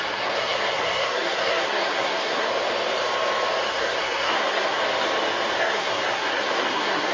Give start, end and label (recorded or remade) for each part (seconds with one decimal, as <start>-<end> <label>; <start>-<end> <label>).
0.0-2.5 remade; 2.5-3.7 recorded; 3.7-4.8 remade; 4.8-5.6 recorded; 5.6-7.1 remade